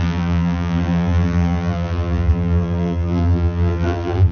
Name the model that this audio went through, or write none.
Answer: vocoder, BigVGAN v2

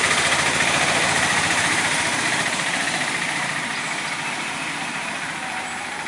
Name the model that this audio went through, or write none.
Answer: vocoder, BigVGAN v2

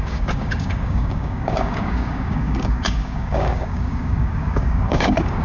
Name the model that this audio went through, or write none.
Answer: codec, DAC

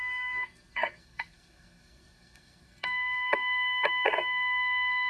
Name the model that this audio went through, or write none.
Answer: codec, SNAC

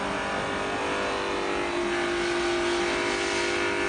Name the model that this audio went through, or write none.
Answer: none